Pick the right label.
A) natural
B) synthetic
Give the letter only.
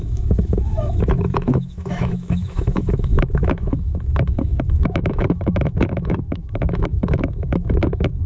B